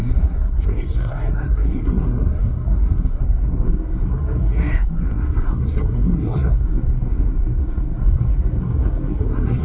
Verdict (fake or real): fake